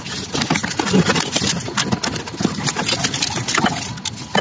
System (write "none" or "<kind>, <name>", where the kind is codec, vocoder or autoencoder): none